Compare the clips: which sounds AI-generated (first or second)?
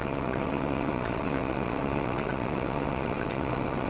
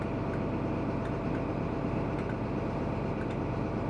first